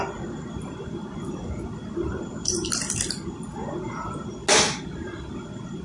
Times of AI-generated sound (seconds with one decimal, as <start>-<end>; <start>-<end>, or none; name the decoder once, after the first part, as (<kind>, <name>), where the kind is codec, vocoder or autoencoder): none